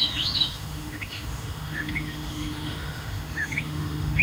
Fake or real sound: fake